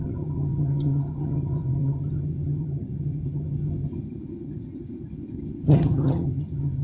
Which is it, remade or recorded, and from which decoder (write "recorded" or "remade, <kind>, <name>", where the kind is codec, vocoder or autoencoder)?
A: remade, vocoder, HiFi-GAN